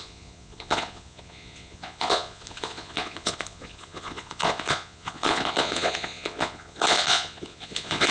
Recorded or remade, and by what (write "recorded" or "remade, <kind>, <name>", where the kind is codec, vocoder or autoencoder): remade, vocoder, Vocos